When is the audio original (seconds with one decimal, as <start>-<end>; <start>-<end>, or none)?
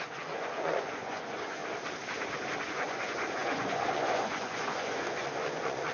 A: 1.6-2.6